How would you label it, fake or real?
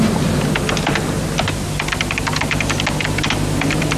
real